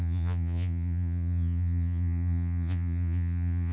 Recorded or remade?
remade